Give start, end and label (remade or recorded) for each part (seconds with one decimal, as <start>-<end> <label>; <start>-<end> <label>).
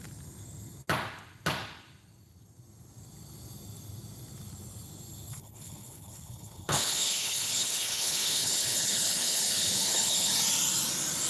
0.0-5.3 recorded; 5.3-10.3 remade; 10.3-11.3 recorded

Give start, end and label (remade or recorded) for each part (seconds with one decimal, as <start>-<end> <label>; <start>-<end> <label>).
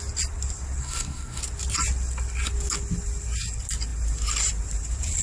0.0-0.8 recorded; 0.8-1.4 remade; 1.4-5.2 recorded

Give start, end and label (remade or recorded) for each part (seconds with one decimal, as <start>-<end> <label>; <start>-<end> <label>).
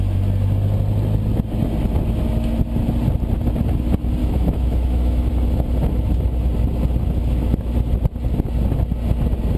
0.0-4.2 recorded; 4.2-5.3 remade; 5.3-9.6 recorded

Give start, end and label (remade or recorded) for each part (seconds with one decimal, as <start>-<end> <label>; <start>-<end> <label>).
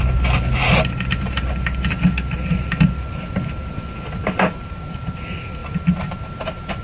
0.0-5.6 remade; 5.6-6.8 recorded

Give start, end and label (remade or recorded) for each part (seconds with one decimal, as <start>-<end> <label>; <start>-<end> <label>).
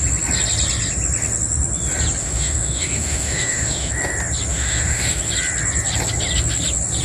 0.0-2.2 recorded; 2.2-3.9 remade; 3.9-4.5 recorded; 4.5-5.2 remade; 5.2-7.0 recorded